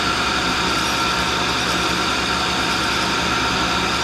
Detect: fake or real real